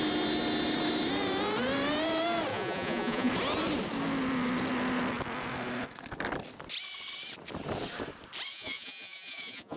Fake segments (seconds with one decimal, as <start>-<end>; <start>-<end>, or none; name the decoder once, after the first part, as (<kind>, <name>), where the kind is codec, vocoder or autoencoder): 2.5-3.3 (vocoder, Vocos); 8.5-9.8